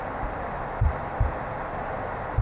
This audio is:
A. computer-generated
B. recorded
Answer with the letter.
B